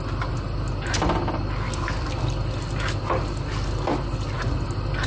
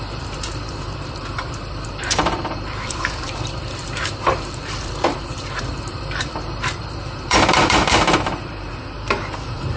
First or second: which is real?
first